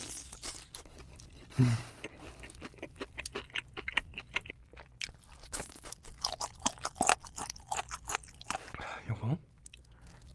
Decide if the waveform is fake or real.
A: real